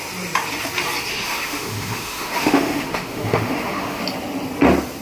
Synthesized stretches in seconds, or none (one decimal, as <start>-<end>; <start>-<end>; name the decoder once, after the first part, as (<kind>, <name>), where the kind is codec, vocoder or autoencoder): 1.1-4.0 (autoencoder, DAC-VAE)